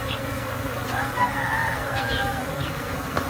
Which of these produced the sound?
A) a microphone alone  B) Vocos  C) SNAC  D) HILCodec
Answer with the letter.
C